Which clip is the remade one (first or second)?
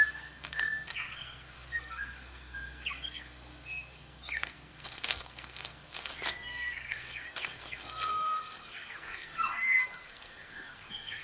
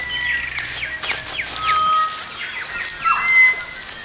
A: first